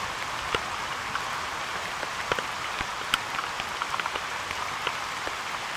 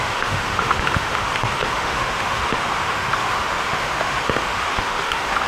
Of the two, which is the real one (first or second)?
first